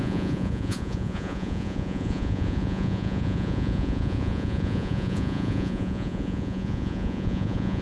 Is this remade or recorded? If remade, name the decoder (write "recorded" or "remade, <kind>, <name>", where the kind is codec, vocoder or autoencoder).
remade, vocoder, Vocos